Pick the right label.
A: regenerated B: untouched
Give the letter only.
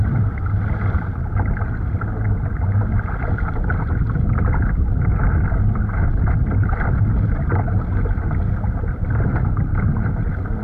B